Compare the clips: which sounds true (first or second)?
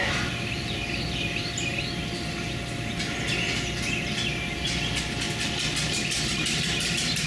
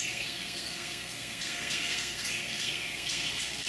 first